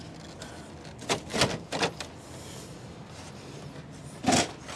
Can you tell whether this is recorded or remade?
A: recorded